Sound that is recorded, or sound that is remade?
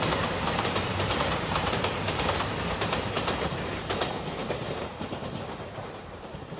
remade